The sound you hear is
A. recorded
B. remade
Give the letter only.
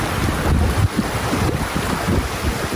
A